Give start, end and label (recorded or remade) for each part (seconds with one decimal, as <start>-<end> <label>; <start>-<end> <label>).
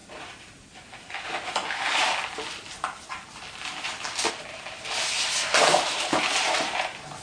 0.0-7.2 recorded